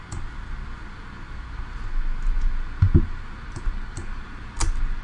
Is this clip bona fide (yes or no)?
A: yes